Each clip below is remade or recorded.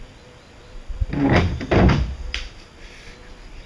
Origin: recorded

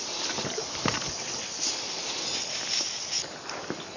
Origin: recorded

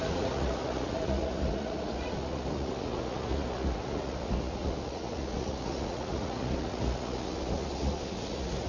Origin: remade